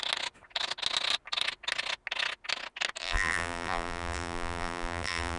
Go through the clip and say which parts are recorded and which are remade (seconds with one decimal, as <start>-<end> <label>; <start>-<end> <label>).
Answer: 0.0-3.0 recorded; 3.0-5.4 remade